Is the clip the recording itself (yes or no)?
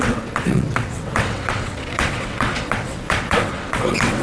no